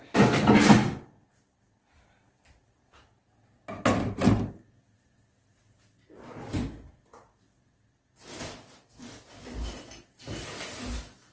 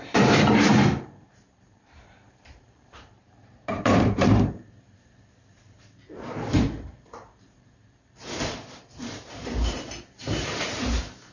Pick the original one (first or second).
first